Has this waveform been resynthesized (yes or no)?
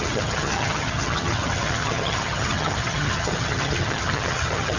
yes